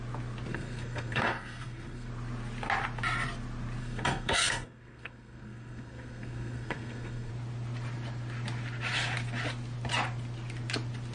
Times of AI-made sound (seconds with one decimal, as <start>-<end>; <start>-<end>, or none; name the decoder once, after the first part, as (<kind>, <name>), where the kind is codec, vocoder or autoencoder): 0.5-2.1 (codec, SNAC); 3.8-7.3